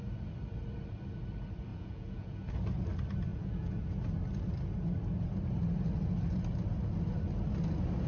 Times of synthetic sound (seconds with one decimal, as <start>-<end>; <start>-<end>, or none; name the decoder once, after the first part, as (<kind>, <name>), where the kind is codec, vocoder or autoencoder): 1.7-2.5 (vocoder, Vocos); 3.3-3.8